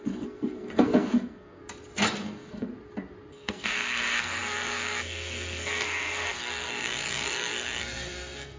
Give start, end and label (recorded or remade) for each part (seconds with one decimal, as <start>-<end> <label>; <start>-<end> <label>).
0.0-1.6 remade; 1.6-2.2 recorded; 2.2-2.7 remade; 2.7-3.3 recorded; 3.3-8.6 remade